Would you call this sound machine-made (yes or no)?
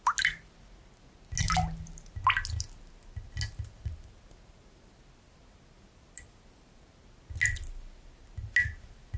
no